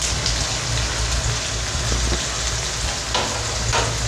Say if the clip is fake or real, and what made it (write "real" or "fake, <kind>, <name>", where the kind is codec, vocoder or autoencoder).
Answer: real